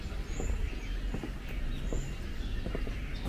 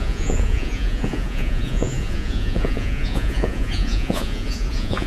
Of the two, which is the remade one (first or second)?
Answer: second